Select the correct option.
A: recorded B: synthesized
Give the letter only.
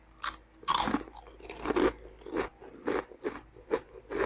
A